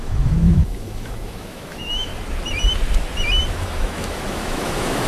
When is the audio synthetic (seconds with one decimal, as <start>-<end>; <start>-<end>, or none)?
0.0-2.1; 3.5-5.1

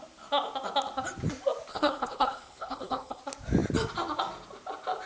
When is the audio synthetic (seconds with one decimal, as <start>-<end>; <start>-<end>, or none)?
1.7-3.2

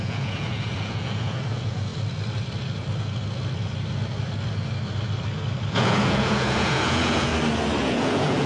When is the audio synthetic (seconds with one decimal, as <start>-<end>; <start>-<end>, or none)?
0.0-1.9; 5.7-7.3; 7.8-8.5

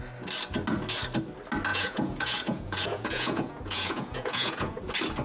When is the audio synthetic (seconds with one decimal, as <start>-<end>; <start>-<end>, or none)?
1.7-4.8